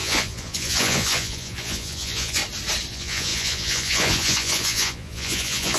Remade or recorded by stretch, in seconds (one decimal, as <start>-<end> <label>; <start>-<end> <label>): 0.0-2.4 remade; 2.4-2.9 recorded; 2.9-5.8 remade